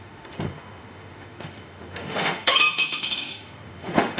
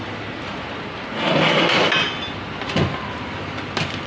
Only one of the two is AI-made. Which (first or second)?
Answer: first